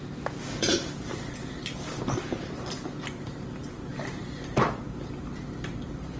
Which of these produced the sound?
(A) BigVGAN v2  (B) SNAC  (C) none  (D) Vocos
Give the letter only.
A